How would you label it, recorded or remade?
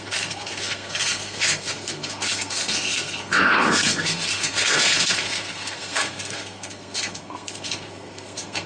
remade